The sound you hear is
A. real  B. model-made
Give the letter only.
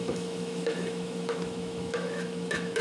B